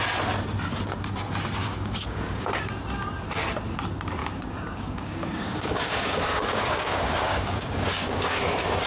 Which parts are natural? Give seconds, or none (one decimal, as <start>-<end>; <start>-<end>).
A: 0.0-1.6; 2.5-4.2; 8.4-8.9

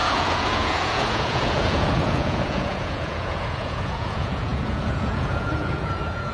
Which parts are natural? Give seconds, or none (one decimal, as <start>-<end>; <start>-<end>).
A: none

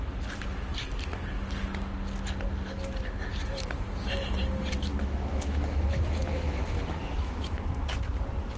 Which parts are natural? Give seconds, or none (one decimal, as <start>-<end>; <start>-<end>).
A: 0.0-4.9; 7.6-8.6

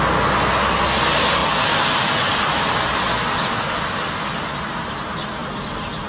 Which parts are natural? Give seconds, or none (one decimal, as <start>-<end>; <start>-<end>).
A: 0.0-1.4; 4.6-5.4

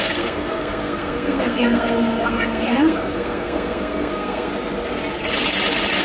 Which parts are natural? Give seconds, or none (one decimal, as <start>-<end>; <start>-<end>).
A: 4.5-6.0